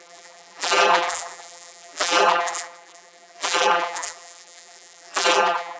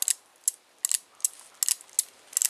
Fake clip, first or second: first